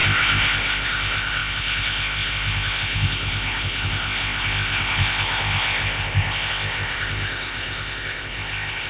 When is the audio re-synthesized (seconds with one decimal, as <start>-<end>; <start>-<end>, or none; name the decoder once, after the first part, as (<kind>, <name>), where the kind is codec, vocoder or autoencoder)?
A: 0.0-8.9 (codec, ZipCodec)